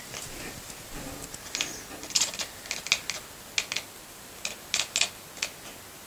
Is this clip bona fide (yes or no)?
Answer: yes